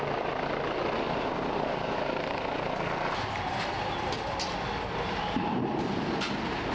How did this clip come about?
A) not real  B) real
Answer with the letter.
B